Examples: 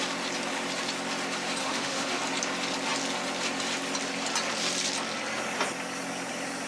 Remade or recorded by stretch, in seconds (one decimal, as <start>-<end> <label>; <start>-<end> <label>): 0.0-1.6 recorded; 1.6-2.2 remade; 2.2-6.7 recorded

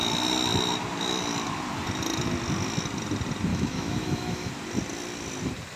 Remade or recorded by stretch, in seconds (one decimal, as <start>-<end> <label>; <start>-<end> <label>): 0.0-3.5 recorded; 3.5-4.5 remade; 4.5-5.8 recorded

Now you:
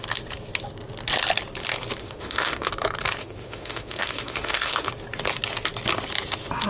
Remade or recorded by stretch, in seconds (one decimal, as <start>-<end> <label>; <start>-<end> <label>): 0.0-2.0 recorded; 2.0-2.7 remade; 2.7-3.2 recorded; 3.2-4.9 remade; 4.9-6.7 recorded

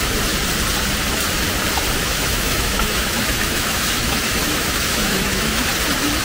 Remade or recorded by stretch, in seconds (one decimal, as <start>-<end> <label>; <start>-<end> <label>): 0.0-2.0 recorded; 2.0-5.7 remade; 5.7-6.2 recorded

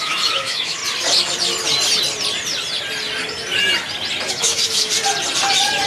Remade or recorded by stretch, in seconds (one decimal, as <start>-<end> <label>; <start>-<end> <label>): 0.0-0.8 remade; 0.8-4.3 recorded; 4.3-4.9 remade; 4.9-5.9 recorded

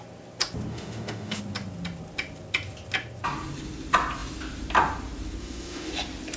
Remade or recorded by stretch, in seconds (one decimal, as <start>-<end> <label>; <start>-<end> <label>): 0.0-0.7 recorded; 0.7-1.4 remade; 1.4-5.4 recorded; 5.4-5.9 remade; 5.9-6.4 recorded

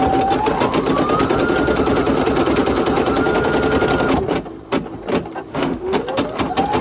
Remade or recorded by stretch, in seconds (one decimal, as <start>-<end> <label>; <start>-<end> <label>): 0.0-5.5 recorded; 5.5-6.0 remade; 6.0-6.8 recorded

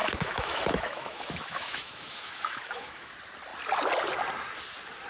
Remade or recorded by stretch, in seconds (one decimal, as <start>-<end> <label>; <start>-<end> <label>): 0.0-3.1 remade; 3.1-5.1 recorded